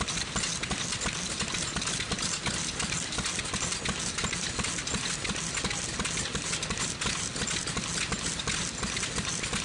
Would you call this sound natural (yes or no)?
yes